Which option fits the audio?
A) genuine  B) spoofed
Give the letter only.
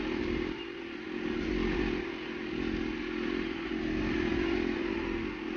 A